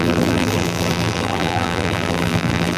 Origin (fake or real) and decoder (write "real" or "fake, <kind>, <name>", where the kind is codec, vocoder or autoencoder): fake, vocoder, BigVGAN v2